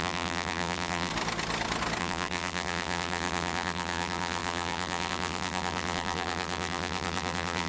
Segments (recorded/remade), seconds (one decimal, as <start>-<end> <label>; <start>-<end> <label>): 0.0-1.1 remade; 1.1-2.0 recorded; 2.0-7.7 remade